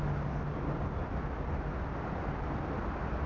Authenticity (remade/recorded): recorded